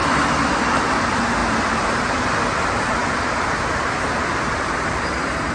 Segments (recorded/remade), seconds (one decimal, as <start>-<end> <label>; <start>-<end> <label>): 0.0-5.5 recorded

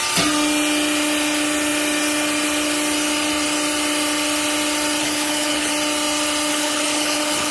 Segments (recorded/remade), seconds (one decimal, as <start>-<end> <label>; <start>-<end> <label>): 0.0-5.0 recorded; 5.0-5.7 remade; 5.7-6.5 recorded; 6.5-7.5 remade

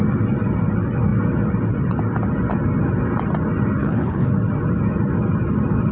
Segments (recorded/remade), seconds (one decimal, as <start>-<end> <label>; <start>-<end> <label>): 0.0-3.8 recorded; 3.8-4.3 remade; 4.3-5.9 recorded

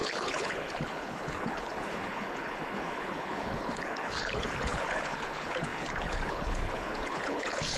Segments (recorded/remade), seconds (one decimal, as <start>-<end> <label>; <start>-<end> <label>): 0.0-7.8 remade

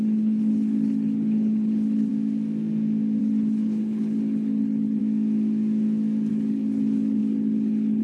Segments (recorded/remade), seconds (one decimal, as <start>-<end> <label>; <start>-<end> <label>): 0.0-2.1 remade; 2.1-3.2 recorded; 3.2-5.0 remade; 5.0-6.3 recorded; 6.3-8.0 remade

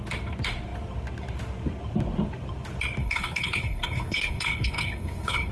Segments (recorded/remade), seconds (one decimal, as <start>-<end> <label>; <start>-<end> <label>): 0.0-3.0 recorded; 3.0-5.5 remade